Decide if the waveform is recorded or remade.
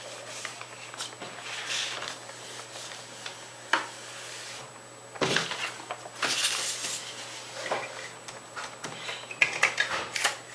recorded